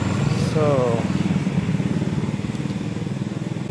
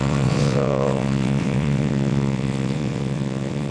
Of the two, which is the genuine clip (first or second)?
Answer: first